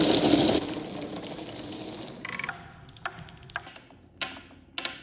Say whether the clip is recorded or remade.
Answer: recorded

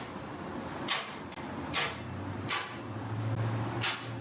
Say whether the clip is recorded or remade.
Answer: recorded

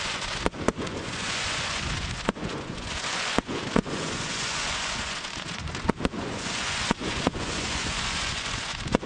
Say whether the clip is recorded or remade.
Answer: remade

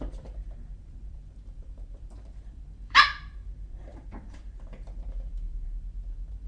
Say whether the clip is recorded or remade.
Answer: remade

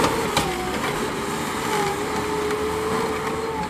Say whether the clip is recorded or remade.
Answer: recorded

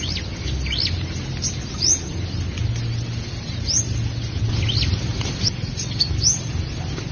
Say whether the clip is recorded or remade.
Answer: recorded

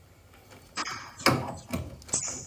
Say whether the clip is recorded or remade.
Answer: recorded